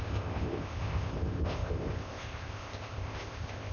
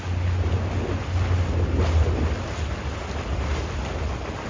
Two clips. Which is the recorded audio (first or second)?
second